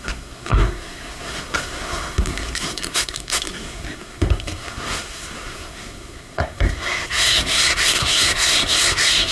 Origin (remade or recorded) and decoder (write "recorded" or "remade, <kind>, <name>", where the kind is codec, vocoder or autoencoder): remade, codec, SNAC